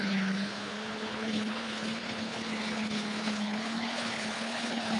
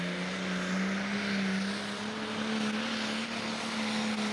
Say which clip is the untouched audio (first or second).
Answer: second